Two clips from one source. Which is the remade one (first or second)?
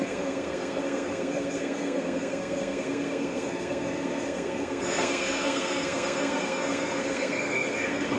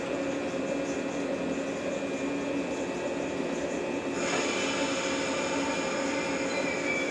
first